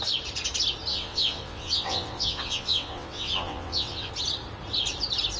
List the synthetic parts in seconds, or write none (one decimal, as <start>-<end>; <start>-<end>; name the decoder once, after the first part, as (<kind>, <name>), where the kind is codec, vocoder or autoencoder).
0.9-4.1 (vocoder, WaveNeXt)